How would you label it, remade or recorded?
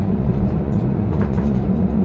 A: remade